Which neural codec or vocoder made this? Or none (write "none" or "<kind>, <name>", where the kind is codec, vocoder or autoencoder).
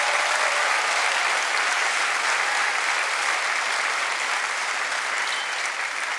none